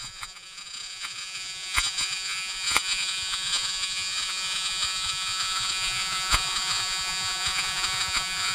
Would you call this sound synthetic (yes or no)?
yes